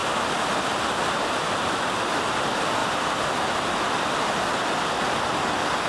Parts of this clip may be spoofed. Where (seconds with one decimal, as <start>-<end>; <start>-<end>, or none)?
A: none